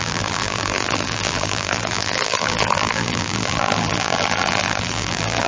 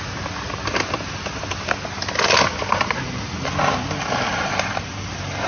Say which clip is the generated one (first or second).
first